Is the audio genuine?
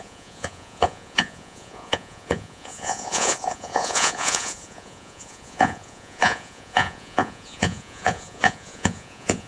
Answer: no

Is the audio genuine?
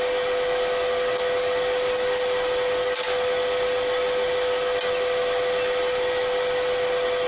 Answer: yes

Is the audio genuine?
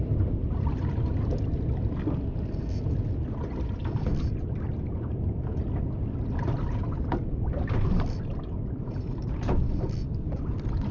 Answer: yes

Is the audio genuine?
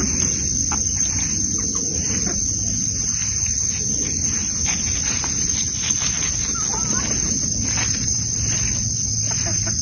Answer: yes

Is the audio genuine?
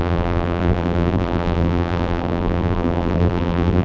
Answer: no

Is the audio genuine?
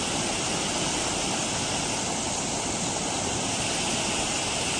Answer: yes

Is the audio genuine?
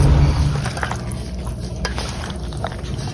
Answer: yes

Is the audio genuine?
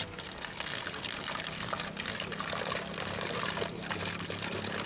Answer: yes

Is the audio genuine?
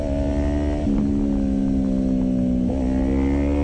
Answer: yes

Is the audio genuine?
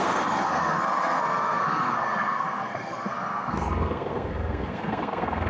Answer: no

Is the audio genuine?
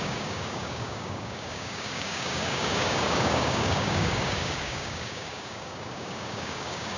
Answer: no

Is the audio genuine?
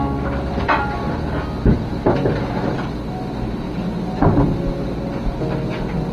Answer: yes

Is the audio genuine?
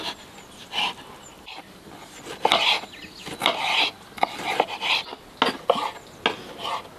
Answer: yes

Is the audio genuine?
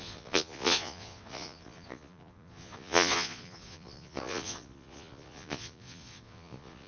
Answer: no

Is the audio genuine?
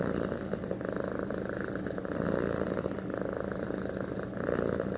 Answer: yes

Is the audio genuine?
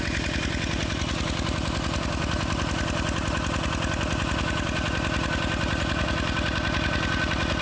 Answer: yes